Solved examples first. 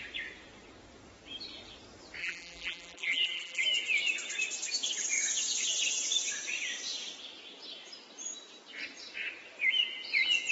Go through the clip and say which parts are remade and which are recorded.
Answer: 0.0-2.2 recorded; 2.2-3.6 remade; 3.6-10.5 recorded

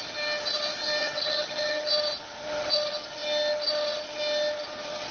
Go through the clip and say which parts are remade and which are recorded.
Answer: 0.0-1.0 recorded; 1.0-1.9 remade; 1.9-5.1 recorded

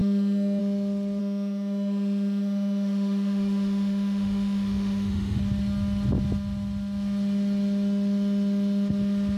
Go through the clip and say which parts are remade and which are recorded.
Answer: 0.0-0.6 remade; 0.6-1.2 recorded; 1.2-5.4 remade; 5.4-9.4 recorded

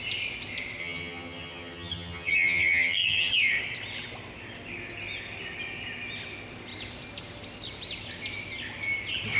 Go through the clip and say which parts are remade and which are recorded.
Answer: 0.0-0.8 recorded; 0.8-3.3 remade; 3.3-9.4 recorded

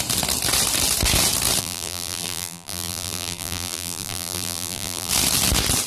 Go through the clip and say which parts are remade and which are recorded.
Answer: 0.0-1.6 recorded; 1.6-5.1 remade; 5.1-5.9 recorded

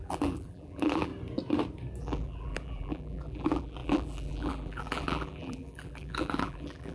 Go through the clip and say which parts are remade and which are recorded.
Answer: 0.0-1.1 remade; 1.1-2.0 recorded; 2.0-6.9 remade

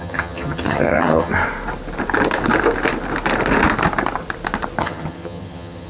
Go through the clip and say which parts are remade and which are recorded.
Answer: 0.0-1.3 remade; 1.3-4.8 recorded; 4.8-5.9 remade

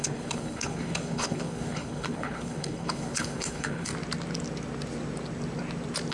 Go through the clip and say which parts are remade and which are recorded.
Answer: 0.0-3.9 remade; 3.9-6.1 recorded